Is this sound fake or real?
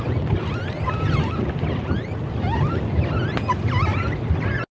real